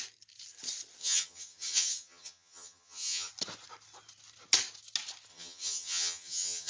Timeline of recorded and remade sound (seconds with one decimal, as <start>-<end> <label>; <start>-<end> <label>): 0.0-1.0 recorded; 1.0-3.3 remade; 3.3-5.3 recorded; 5.3-6.7 remade